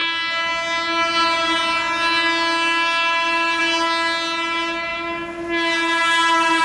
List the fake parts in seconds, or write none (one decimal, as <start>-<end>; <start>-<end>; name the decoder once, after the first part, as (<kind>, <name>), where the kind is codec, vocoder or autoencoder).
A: none